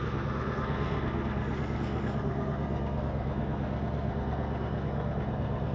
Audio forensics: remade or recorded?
remade